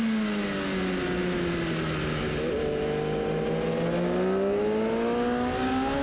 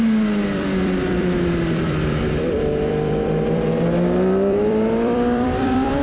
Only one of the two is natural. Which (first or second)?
first